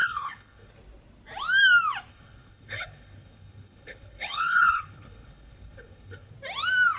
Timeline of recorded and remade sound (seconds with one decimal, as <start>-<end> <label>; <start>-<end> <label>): 0.0-0.7 remade; 0.7-2.1 recorded; 2.1-6.3 remade; 6.3-7.0 recorded